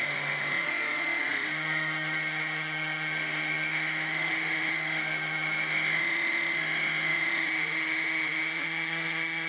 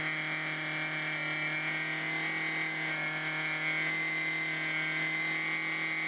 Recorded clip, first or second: second